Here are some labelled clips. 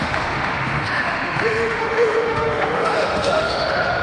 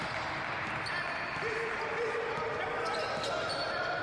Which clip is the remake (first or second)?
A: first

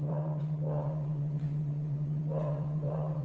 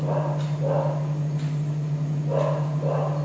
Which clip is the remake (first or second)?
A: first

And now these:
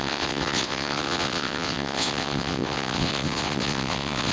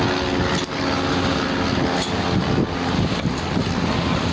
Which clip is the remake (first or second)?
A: first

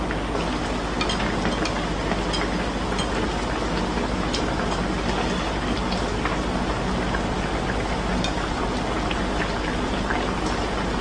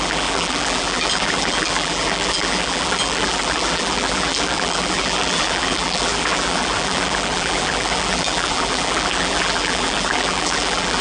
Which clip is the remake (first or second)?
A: second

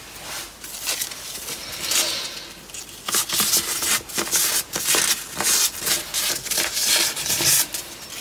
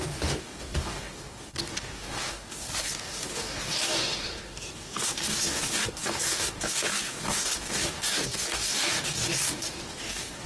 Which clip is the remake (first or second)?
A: second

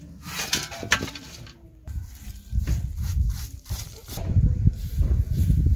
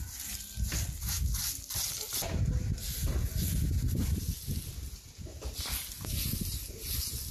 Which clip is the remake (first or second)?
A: first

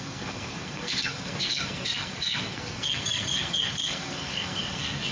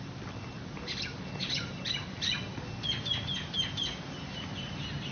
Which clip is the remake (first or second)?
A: first